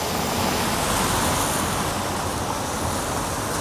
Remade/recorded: recorded